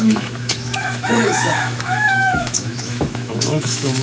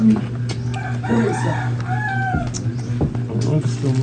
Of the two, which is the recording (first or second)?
second